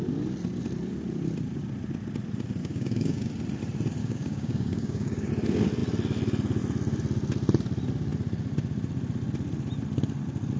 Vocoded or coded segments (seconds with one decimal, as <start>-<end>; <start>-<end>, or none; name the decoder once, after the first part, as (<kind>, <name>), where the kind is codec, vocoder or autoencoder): 2.6-3.3 (codec, DAC); 4.0-5.3